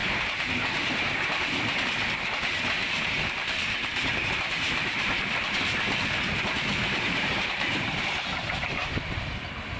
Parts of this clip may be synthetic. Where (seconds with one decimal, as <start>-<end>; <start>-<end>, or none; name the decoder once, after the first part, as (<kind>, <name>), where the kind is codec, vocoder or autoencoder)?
0.0-1.7 (vocoder, BigVGAN v2); 2.8-8.0; 8.6-9.2